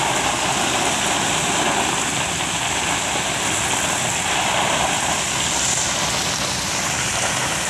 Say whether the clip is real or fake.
real